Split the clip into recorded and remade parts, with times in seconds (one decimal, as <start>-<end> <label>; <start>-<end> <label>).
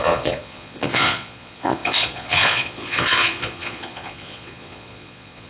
0.0-5.5 remade